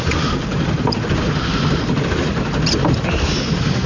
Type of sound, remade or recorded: recorded